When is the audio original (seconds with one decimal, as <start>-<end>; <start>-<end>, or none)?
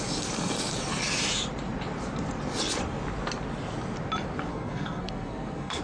0.0-4.5